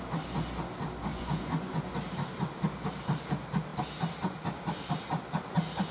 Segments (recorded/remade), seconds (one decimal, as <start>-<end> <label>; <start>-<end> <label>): 0.0-1.1 recorded; 1.1-1.9 remade; 1.9-5.9 recorded